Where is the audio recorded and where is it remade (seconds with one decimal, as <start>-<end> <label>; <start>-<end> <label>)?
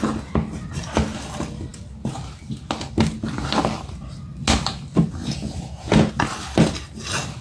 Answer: 0.0-5.2 recorded; 5.2-6.1 remade; 6.1-7.4 recorded